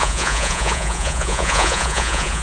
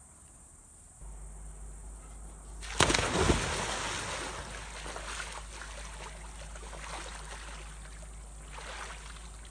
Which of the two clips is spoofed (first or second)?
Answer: first